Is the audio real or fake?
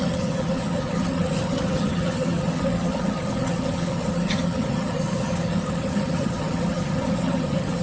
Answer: fake